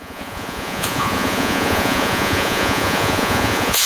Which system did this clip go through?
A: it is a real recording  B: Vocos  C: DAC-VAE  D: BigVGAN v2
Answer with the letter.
B